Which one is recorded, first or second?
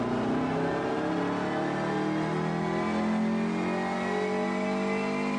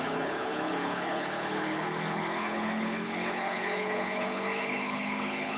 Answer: first